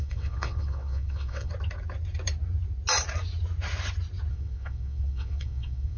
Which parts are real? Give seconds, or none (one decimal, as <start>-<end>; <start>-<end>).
1.5-4.3